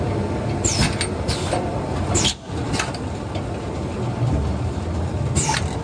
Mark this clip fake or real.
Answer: real